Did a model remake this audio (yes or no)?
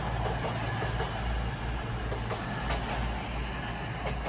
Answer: no